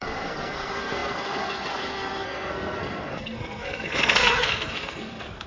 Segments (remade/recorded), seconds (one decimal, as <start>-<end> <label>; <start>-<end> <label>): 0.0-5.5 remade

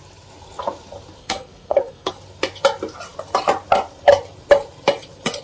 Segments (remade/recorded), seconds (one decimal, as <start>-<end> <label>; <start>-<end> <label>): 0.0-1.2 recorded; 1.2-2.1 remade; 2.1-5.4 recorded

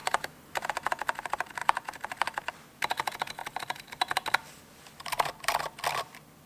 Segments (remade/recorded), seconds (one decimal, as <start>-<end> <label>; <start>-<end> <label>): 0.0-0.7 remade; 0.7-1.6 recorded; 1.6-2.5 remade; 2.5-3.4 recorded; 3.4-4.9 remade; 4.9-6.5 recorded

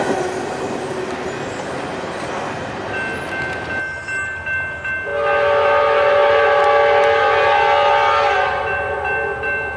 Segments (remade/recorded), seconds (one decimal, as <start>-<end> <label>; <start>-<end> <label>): 0.0-9.8 recorded

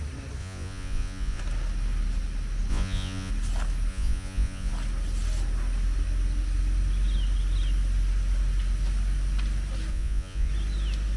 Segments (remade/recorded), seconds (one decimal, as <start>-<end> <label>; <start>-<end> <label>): 0.0-0.4 recorded; 0.4-1.4 remade; 1.4-2.7 recorded; 2.7-3.3 remade; 3.3-3.9 recorded; 3.9-4.7 remade; 4.7-9.9 recorded; 9.9-10.5 remade; 10.5-11.2 recorded

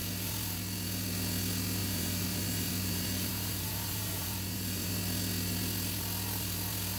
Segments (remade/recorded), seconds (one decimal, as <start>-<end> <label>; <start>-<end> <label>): 0.0-1.8 recorded; 1.8-4.9 remade; 4.9-7.0 recorded

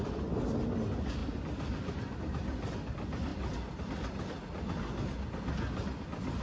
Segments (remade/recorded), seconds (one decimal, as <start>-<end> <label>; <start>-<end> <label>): 0.0-6.4 recorded